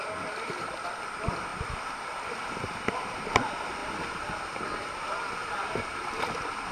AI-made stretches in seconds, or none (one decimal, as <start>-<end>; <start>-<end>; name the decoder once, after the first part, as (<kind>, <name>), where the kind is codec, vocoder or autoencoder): none